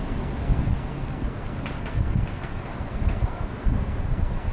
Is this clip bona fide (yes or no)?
no